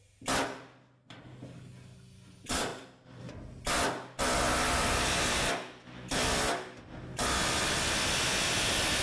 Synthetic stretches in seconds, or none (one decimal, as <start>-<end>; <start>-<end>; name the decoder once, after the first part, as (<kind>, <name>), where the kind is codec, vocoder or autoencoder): none